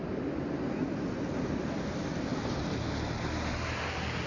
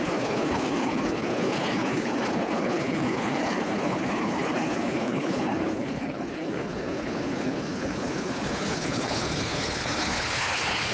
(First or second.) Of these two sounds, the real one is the first